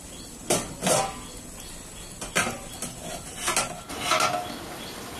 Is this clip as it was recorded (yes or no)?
yes